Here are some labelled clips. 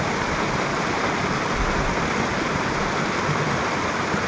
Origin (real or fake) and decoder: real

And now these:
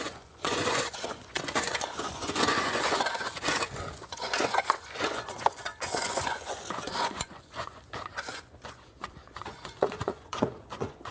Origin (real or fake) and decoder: fake, vocoder, Vocos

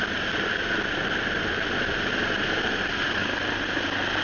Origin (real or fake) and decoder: real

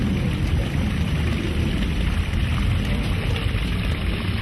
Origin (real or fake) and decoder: real